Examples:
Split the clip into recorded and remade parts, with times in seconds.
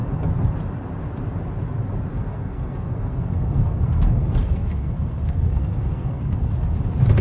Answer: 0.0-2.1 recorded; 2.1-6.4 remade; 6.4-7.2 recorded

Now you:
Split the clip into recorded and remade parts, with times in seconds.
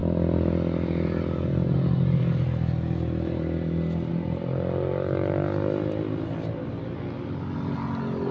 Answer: 0.0-8.3 recorded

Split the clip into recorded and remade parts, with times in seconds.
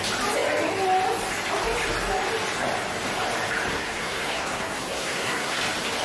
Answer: 0.0-3.7 recorded; 3.7-5.6 remade; 5.6-6.0 recorded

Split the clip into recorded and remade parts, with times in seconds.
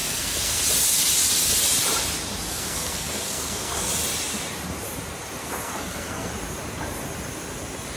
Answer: 0.0-0.6 remade; 0.6-2.5 recorded; 2.5-3.9 remade; 3.9-5.4 recorded; 5.4-6.3 remade; 6.3-8.0 recorded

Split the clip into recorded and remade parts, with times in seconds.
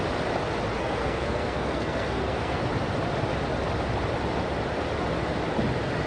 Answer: 0.0-0.8 recorded; 0.8-2.6 remade; 2.6-6.1 recorded